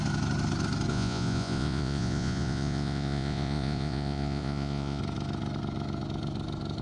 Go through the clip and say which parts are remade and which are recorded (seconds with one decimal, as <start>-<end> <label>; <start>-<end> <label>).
0.0-0.9 recorded; 0.9-5.0 remade; 5.0-6.8 recorded